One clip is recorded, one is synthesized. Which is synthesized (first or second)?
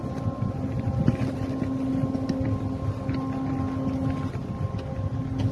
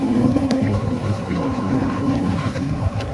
second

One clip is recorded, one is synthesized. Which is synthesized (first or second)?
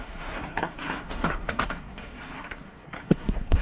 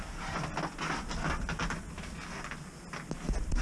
first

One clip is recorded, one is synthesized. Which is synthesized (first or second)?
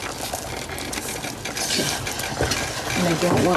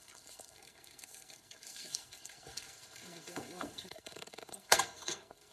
second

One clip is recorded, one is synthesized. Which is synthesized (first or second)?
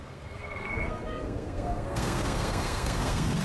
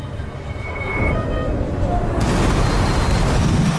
first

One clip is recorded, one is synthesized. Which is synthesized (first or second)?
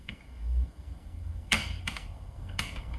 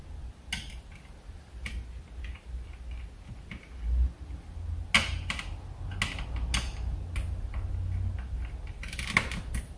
first